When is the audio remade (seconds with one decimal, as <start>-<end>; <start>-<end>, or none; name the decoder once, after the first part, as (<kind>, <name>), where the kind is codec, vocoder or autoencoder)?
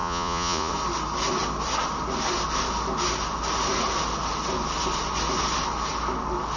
0.0-0.7 (vocoder, Vocos)